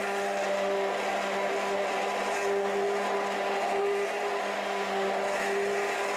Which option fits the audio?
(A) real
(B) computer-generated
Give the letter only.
A